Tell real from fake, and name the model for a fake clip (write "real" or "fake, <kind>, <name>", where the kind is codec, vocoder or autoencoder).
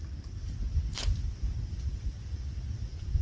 fake, vocoder, BigVGAN v2